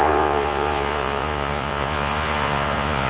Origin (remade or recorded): remade